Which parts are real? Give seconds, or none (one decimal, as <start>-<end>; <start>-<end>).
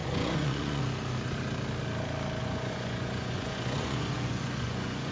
0.8-2.4